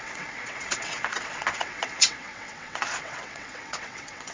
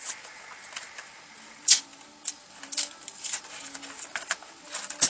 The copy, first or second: first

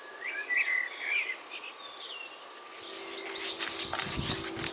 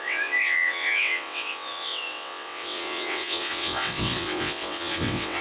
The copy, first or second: second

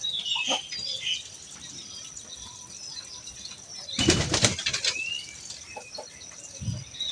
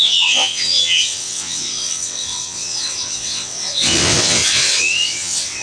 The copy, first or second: second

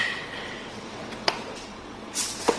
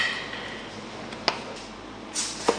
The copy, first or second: first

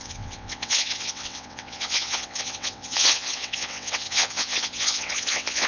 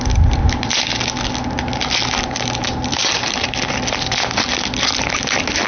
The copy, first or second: first